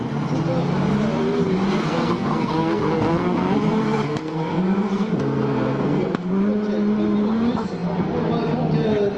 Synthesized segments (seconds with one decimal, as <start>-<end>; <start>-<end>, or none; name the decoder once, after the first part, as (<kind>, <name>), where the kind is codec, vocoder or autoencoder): 1.8-6.3 (codec, SNAC)